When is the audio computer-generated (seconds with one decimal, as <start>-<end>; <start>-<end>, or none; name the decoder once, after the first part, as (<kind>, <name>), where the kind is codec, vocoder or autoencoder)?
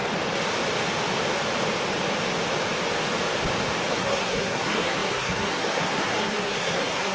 3.9-7.1 (codec, SNAC)